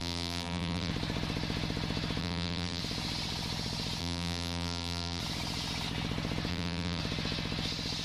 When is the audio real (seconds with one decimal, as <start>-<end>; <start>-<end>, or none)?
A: 0.9-2.2; 2.8-4.0; 5.2-6.5; 7.0-8.0